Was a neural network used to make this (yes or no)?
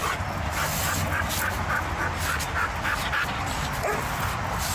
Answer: no